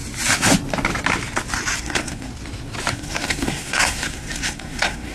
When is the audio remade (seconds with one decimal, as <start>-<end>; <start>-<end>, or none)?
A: 1.8-2.3; 2.9-5.1

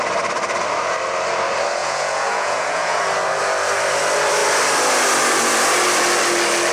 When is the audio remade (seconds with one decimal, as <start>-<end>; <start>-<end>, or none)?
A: 1.8-3.0

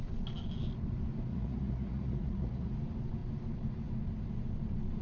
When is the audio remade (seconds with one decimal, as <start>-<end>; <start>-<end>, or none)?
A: 1.3-2.7

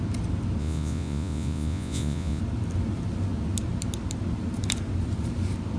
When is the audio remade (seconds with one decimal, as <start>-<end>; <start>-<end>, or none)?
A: 0.6-2.4

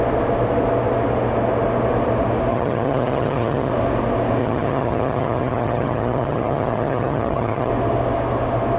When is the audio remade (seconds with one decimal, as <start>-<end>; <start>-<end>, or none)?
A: 2.5-3.7; 4.4-7.7

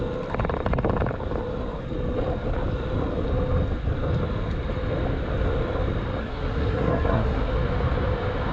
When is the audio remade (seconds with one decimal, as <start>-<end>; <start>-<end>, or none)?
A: 6.2-7.5